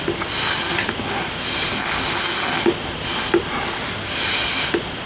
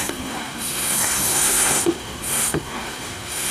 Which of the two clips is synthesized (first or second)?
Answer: second